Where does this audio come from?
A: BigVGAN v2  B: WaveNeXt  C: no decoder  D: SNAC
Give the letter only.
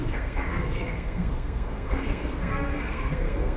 D